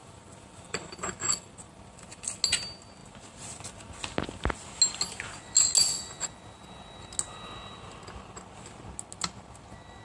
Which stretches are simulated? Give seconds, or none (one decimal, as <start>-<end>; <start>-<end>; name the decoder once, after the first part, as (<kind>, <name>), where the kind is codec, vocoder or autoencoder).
0.0-2.4 (vocoder, BigVGAN v2)